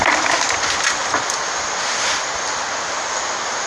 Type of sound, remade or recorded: recorded